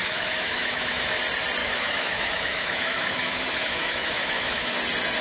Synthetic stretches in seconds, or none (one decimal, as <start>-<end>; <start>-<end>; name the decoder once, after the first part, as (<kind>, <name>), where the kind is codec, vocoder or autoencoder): 0.0-1.2 (autoencoder, DAC-VAE); 1.6-4.7